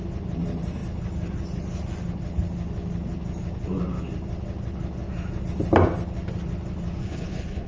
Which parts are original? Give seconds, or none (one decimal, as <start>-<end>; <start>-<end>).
0.0-7.0